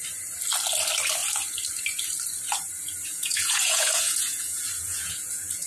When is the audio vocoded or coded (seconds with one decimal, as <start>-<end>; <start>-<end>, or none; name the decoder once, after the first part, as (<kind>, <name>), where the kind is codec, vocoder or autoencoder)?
3.1-5.7 (vocoder, Vocos)